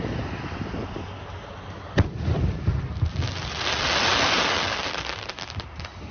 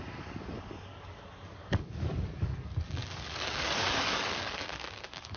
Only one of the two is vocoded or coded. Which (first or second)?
second